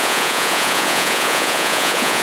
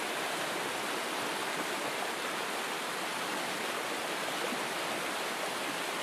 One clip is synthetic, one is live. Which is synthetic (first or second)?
first